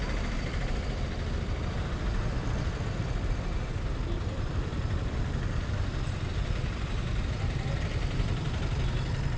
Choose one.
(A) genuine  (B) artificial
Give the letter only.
A